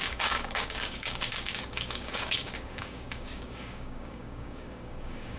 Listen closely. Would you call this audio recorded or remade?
remade